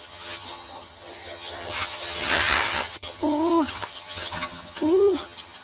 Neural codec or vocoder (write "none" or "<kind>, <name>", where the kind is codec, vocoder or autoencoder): vocoder, HiFi-GAN